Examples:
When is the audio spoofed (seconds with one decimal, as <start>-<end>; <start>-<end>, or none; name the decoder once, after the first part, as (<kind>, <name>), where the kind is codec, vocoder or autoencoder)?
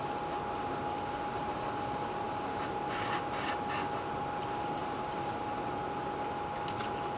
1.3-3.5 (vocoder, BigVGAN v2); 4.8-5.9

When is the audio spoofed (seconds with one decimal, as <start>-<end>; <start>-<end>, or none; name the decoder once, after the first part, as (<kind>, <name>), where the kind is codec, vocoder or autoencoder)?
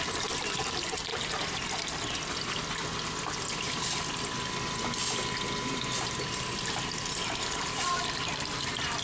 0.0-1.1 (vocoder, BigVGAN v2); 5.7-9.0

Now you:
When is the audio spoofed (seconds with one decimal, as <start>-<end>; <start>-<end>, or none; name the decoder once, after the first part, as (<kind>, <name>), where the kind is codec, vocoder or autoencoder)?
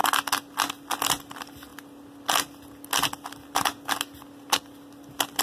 none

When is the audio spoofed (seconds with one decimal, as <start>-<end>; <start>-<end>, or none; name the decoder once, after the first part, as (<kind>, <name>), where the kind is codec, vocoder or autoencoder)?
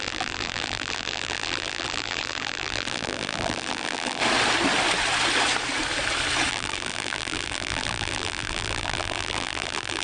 0.0-4.2 (vocoder, BigVGAN v2); 6.5-10.0